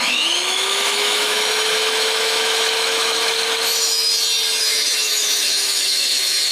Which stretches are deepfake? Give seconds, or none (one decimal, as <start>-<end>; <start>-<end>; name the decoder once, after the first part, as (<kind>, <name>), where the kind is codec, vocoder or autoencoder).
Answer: 0.0-4.1 (autoencoder, DAC-VAE); 4.6-6.5